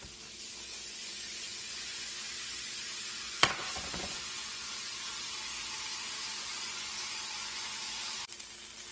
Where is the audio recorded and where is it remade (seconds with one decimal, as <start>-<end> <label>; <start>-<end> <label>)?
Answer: 0.0-0.7 recorded; 0.7-2.3 remade; 2.3-3.2 recorded; 3.2-4.9 remade; 4.9-6.3 recorded; 6.3-8.2 remade; 8.2-8.9 recorded